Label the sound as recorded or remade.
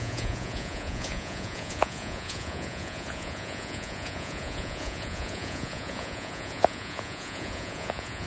remade